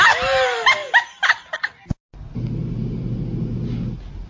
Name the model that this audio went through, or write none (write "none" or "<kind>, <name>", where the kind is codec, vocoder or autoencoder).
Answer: none